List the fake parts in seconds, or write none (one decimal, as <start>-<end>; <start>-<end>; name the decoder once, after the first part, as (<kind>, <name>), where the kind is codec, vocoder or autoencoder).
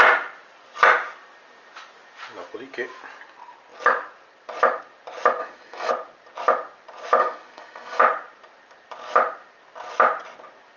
5.4-5.9 (codec, SNAC); 7.2-8.0